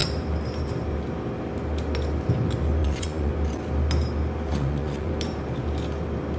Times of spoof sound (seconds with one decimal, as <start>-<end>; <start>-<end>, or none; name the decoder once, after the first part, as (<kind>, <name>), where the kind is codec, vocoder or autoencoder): 2.8-3.3 (vocoder, Vocos); 4.5-5.1